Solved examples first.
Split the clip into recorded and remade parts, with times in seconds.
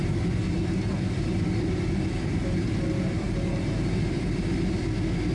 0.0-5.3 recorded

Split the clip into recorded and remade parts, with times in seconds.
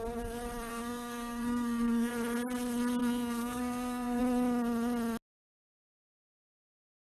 0.0-0.7 recorded; 0.7-2.1 remade; 2.1-3.0 recorded; 3.0-4.2 remade; 4.2-7.1 recorded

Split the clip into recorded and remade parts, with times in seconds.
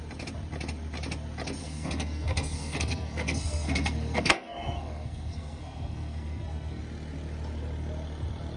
0.0-1.6 recorded; 1.6-6.8 remade; 6.8-8.6 recorded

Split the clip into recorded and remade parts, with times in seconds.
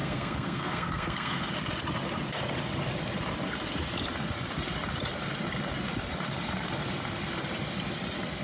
0.0-1.5 remade; 1.5-8.4 recorded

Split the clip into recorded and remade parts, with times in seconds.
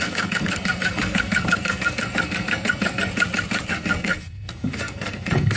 0.0-3.1 remade; 3.1-3.7 recorded; 3.7-5.6 remade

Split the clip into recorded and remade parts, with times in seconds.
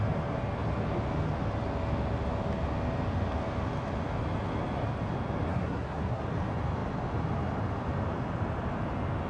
0.0-5.5 recorded; 5.5-6.2 remade; 6.2-9.3 recorded